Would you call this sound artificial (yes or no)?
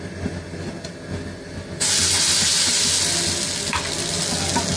no